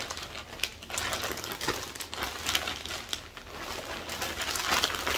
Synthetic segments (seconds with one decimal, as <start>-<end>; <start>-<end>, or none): none